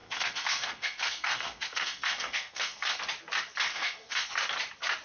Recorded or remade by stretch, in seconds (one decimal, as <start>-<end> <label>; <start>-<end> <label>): 0.0-3.0 remade; 3.0-3.7 recorded; 3.7-4.3 remade; 4.3-5.0 recorded